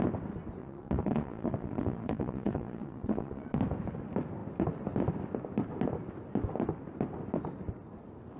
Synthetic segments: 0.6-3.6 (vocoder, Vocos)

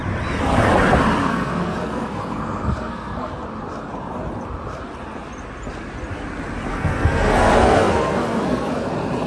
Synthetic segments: 1.2-3.3 (codec, SNAC); 6.7-8.7

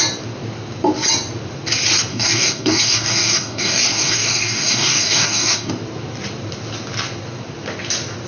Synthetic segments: 2.1-5.7 (codec, DAC)

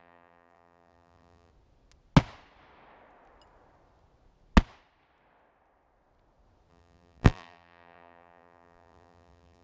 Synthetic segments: 0.0-1.5 (vocoder, BigVGAN v2); 6.7-9.6